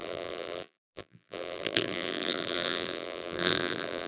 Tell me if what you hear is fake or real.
fake